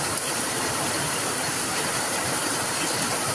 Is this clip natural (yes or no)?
no